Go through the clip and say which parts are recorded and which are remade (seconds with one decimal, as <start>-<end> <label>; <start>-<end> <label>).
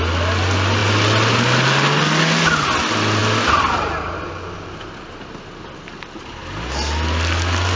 0.0-7.8 recorded